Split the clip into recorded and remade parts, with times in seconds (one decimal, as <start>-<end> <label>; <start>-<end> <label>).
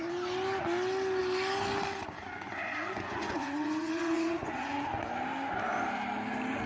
0.0-2.2 recorded; 2.2-4.8 remade; 4.8-6.7 recorded